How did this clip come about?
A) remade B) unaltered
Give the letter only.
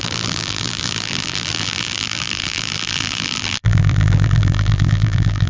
A